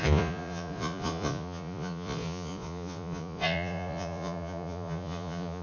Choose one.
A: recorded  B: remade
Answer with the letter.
B